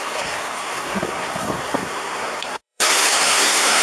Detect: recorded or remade remade